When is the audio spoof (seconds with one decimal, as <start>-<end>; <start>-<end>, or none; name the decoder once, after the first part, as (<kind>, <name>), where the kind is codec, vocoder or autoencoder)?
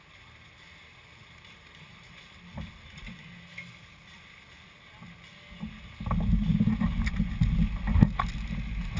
none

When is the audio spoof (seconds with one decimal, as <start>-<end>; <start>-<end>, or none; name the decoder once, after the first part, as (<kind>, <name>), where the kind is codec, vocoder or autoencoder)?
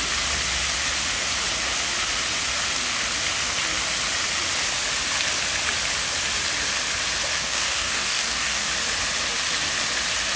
7.4-8.7 (codec, DAC)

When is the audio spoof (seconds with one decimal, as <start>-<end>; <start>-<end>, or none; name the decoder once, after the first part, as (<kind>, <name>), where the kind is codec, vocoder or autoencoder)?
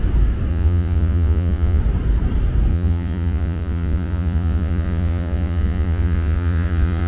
0.5-1.8 (vocoder, Vocos); 2.7-7.1